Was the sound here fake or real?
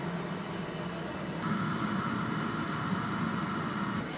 real